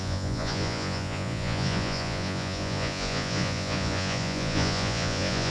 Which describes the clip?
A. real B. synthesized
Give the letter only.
B